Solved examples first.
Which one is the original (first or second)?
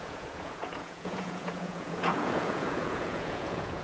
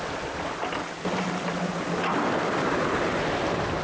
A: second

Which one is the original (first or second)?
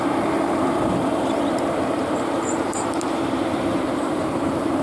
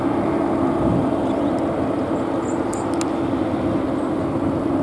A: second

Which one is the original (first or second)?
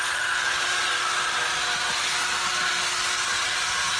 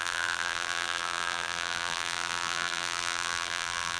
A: first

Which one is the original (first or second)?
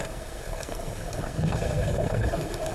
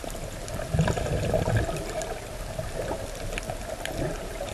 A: second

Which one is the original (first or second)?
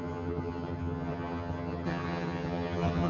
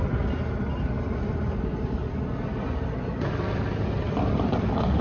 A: second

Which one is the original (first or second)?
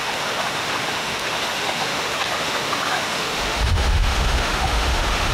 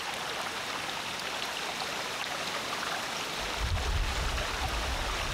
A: second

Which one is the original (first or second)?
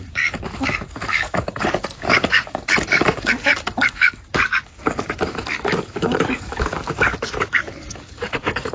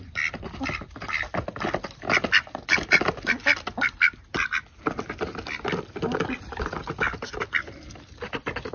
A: second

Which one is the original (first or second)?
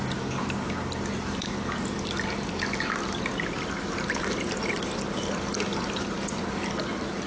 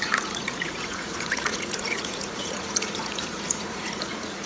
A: first